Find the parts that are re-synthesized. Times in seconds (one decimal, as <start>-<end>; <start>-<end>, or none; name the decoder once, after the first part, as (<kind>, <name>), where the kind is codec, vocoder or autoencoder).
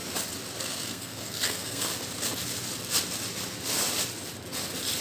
0.6-1.9 (codec, SNAC)